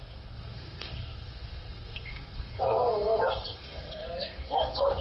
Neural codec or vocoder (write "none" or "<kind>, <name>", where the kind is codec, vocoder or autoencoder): codec, SNAC